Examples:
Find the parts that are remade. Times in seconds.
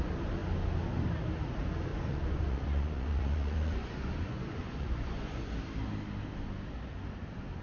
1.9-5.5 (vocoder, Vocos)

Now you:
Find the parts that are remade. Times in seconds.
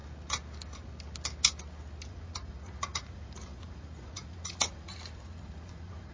2.1-6.1 (vocoder, Vocos)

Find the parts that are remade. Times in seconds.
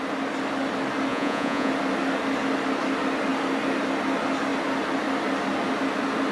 1.1-1.7 (vocoder, Vocos)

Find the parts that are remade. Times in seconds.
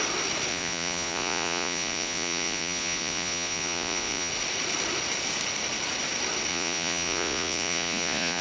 0.5-4.3 (vocoder, Vocos); 6.5-8.4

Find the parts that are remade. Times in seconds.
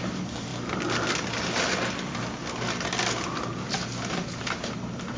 none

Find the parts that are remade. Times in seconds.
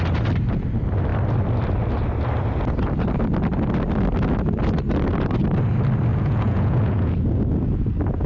6.1-7.4 (vocoder, Vocos)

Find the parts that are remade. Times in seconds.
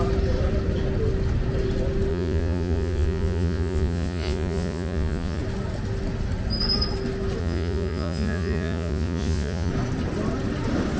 2.1-5.4 (vocoder, Vocos); 7.4-9.7